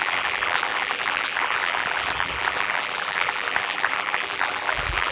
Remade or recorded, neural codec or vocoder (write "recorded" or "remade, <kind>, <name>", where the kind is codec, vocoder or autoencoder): remade, vocoder, BigVGAN v2